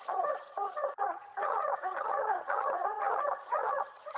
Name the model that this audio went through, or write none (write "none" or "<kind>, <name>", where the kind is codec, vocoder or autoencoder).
vocoder, HiFi-GAN